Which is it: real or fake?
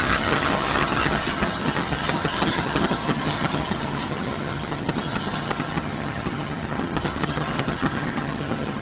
fake